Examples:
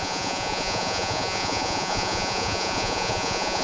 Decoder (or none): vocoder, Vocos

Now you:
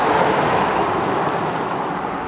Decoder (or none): none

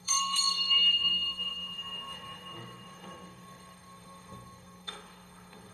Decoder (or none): codec, SNAC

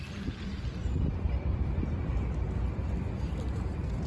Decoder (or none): none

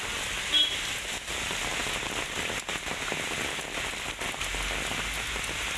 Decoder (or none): none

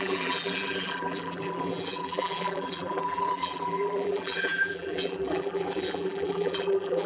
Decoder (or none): vocoder, BigVGAN v2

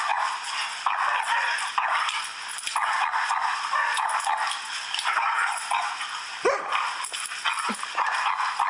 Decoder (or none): none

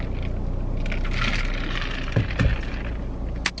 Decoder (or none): none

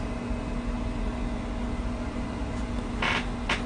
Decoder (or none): none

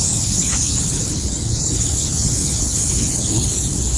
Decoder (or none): codec, HILCodec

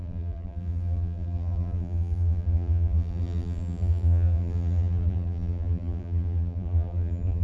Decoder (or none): vocoder, BigVGAN v2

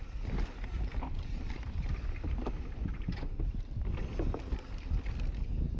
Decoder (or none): none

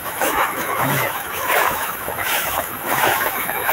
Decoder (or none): autoencoder, DAC-VAE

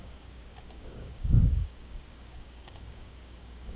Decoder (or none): codec, DAC